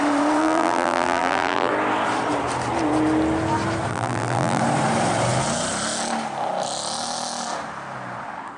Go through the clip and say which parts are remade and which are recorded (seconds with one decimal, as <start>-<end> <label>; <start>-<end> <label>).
0.0-0.4 recorded; 0.4-1.7 remade; 1.7-3.9 recorded; 3.9-4.6 remade; 4.6-8.6 recorded